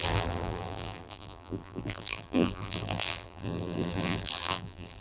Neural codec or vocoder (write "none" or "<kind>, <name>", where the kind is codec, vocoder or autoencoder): vocoder, BigVGAN v2